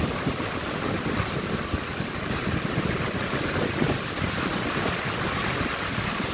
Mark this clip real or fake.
fake